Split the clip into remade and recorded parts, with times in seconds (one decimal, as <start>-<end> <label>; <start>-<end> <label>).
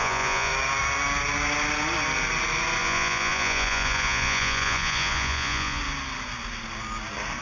0.0-0.5 remade; 0.5-2.8 recorded; 2.8-5.8 remade; 5.8-7.4 recorded